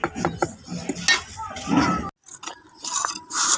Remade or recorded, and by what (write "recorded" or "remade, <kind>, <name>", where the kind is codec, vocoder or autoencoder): recorded